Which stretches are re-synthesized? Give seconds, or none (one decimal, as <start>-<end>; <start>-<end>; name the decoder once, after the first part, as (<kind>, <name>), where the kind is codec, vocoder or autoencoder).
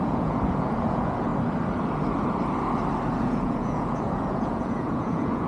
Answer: 0.0-1.3 (vocoder, Vocos); 3.2-5.5